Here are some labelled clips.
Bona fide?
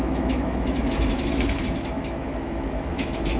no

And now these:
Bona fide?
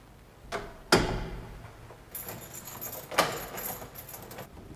yes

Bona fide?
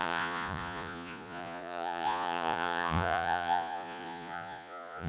no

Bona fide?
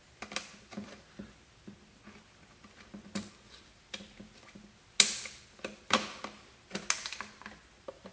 yes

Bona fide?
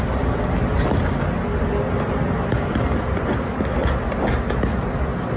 yes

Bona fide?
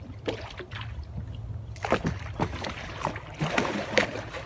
yes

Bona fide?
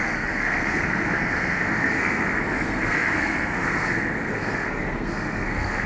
no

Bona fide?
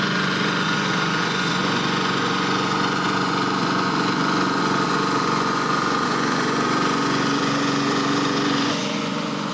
no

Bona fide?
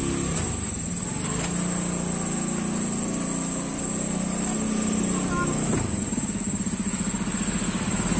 yes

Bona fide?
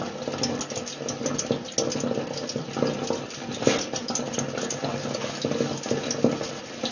yes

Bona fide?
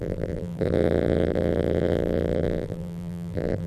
no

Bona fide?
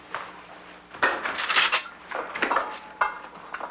yes